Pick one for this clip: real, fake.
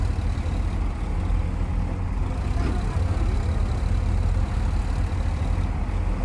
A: real